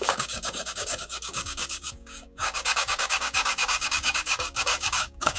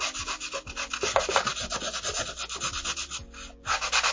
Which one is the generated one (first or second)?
first